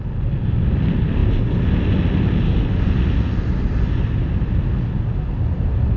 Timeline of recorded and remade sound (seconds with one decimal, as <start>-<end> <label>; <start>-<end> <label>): 0.0-6.0 recorded